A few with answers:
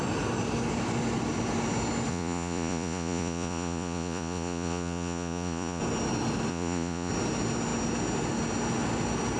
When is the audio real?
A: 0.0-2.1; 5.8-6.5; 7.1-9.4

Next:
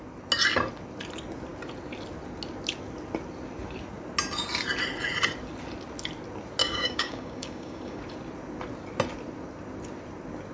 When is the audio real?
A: 0.0-6.6; 8.0-10.5

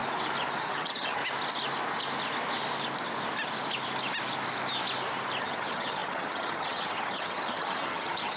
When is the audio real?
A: 0.0-0.6; 1.2-5.4

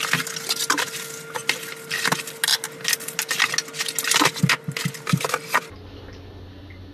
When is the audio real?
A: 0.0-6.9

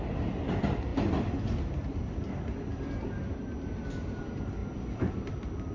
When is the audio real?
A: 0.0-5.7

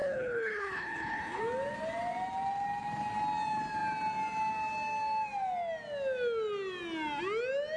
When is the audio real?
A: 1.4-7.8